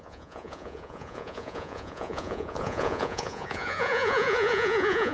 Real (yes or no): no